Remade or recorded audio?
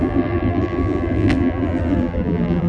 remade